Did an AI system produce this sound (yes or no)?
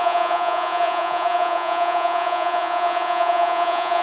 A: yes